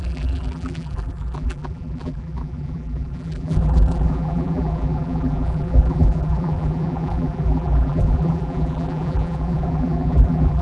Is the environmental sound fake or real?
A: fake